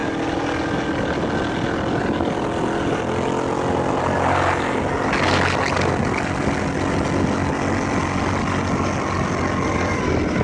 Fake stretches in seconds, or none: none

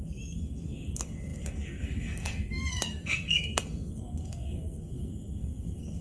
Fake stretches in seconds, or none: 0.0-6.0